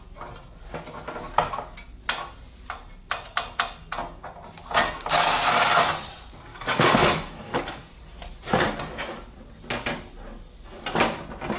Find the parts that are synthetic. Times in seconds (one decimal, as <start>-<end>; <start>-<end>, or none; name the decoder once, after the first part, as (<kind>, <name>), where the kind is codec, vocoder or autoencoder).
6.5-7.9 (codec, DAC)